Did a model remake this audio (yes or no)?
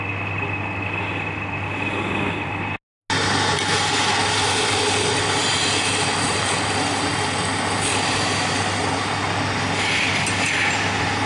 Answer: no